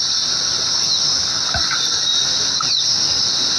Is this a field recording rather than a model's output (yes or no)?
yes